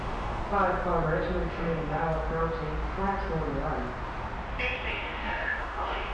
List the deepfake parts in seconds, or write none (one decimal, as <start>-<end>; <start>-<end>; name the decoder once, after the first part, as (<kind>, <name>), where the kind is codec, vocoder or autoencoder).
0.0-0.4 (autoencoder, DAC-VAE); 1.5-2.0; 4.9-6.1